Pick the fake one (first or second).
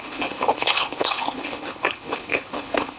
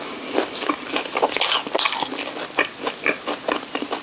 first